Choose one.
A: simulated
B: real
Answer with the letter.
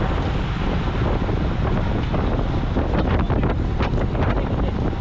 B